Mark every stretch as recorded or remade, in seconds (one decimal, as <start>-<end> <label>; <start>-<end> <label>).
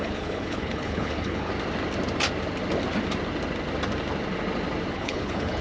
0.0-1.5 remade; 1.5-4.9 recorded; 4.9-5.6 remade